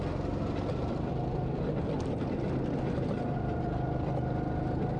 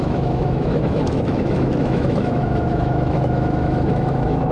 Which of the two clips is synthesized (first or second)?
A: second